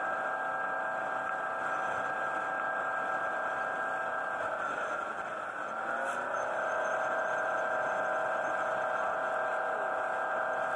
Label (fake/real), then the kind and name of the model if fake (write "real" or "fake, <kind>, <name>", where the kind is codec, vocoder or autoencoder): real